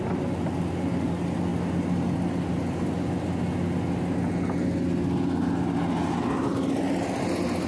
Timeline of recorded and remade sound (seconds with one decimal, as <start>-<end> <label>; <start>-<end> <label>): 0.0-7.7 recorded